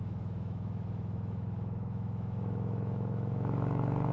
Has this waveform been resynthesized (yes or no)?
yes